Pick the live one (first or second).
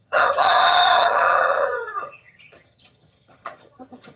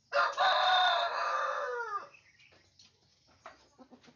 second